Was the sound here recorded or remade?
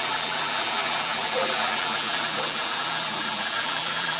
remade